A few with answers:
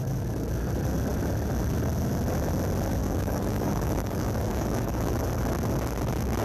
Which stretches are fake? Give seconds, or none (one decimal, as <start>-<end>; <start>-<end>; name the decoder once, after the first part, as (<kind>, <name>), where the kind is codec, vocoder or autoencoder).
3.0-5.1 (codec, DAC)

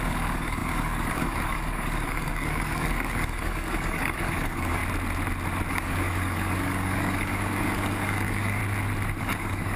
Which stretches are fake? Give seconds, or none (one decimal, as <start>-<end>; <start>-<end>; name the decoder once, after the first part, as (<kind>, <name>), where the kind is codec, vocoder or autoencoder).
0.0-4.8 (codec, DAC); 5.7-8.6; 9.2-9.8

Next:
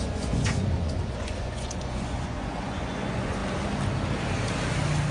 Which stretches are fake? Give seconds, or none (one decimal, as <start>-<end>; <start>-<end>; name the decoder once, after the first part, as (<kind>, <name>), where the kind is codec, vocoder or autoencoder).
0.0-3.4 (vocoder, Vocos)

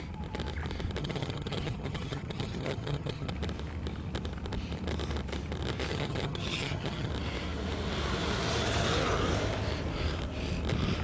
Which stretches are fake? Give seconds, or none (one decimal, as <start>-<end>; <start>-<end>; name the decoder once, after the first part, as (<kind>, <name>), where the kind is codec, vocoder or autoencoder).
1.0-3.3 (vocoder, HiFi-GAN); 5.9-7.1

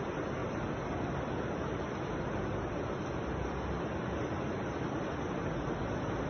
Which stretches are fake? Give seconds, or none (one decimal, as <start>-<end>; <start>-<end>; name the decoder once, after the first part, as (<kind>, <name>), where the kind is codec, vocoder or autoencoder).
none

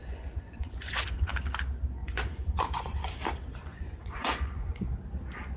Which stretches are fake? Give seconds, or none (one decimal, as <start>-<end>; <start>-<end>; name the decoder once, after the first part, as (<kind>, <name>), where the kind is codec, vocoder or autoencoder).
0.0-1.3 (vocoder, Vocos); 2.0-3.1; 3.6-4.9

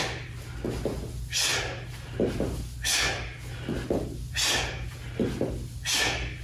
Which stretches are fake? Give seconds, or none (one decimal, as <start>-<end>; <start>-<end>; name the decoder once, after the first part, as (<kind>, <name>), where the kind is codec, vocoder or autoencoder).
none

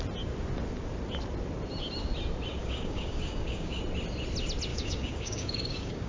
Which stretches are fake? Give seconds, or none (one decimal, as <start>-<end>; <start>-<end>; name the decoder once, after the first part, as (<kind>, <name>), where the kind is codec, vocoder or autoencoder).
2.6-3.8 (codec, DAC); 4.7-6.1